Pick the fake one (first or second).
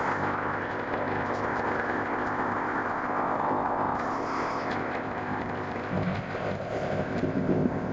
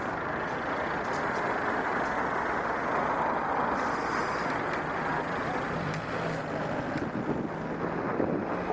first